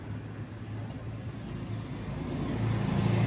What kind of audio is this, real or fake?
real